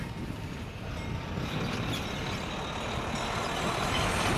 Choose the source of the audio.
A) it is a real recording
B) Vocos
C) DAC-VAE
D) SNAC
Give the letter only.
A